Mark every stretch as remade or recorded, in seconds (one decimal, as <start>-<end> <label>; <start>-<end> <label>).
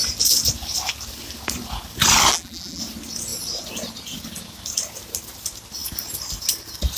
0.0-2.3 recorded; 2.3-2.8 remade; 2.8-7.0 recorded